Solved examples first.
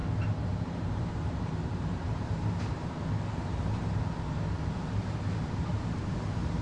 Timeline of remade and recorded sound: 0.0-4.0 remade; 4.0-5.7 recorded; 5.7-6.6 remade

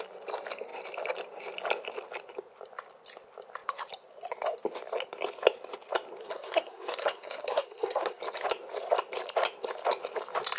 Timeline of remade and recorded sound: 0.0-6.2 recorded; 6.2-8.2 remade; 8.2-10.6 recorded

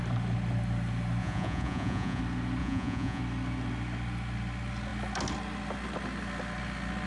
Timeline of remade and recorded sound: 0.0-1.2 recorded; 1.2-2.2 remade; 2.2-2.6 recorded; 2.6-3.2 remade; 3.2-7.1 recorded

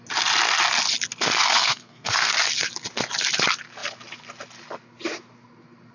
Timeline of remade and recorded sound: 0.0-1.5 recorded; 1.5-2.3 remade; 2.3-5.9 recorded

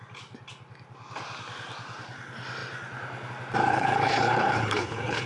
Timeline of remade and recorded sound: 0.0-3.7 recorded; 3.7-5.3 remade

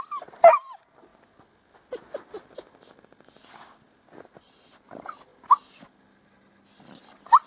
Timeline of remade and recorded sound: 0.0-7.5 recorded